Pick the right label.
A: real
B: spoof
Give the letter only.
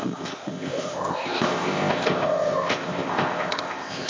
B